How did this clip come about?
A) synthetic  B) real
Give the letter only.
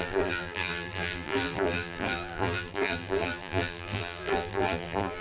A